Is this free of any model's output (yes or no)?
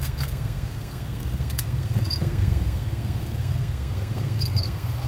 no